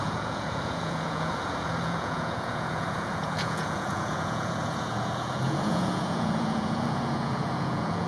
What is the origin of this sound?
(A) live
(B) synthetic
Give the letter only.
B